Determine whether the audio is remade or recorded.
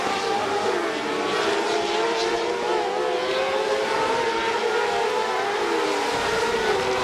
recorded